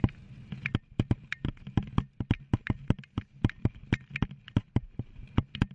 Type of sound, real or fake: real